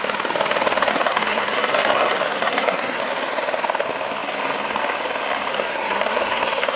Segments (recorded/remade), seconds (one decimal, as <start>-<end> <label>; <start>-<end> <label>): 0.0-0.9 recorded; 0.9-3.0 remade; 3.0-5.5 recorded; 5.5-6.8 remade